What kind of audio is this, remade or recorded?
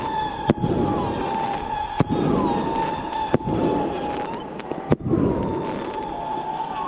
recorded